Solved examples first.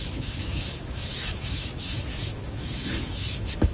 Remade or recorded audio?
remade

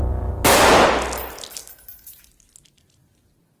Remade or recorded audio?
recorded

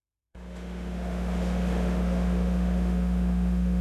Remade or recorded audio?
remade